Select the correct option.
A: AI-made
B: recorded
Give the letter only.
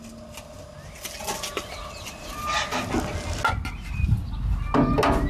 B